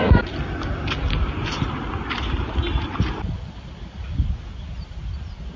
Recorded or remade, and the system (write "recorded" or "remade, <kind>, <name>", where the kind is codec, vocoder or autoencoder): recorded